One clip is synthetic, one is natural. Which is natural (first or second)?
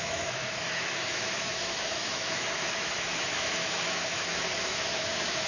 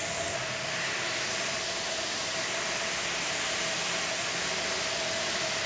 second